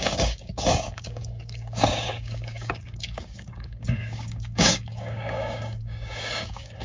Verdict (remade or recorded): remade